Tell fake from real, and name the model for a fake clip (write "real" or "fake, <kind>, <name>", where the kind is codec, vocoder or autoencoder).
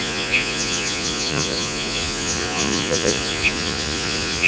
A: fake, vocoder, Vocos